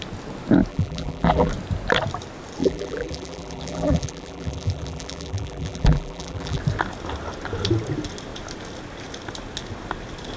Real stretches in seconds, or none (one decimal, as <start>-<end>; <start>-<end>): 0.0-0.7; 1.5-2.6; 6.6-10.4

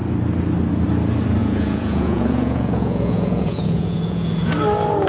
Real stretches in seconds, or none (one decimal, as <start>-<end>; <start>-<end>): 0.0-1.4; 4.5-5.1